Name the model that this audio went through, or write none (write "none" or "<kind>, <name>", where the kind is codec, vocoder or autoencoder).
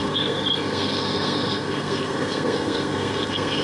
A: codec, SNAC